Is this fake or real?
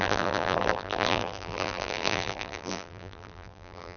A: fake